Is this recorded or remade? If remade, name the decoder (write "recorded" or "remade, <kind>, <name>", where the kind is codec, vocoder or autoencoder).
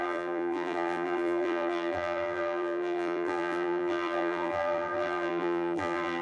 remade, vocoder, BigVGAN v2